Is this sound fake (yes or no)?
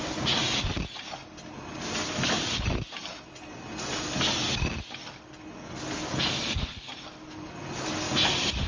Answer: no